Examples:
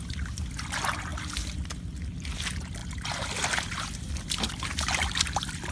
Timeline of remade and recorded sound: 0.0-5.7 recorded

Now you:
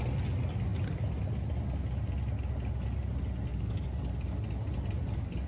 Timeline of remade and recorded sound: 0.0-3.5 recorded; 3.5-4.0 remade; 4.0-5.5 recorded

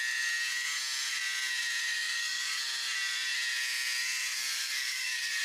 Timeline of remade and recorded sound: 0.0-1.8 recorded; 1.8-2.6 remade; 2.6-4.4 recorded; 4.4-5.4 remade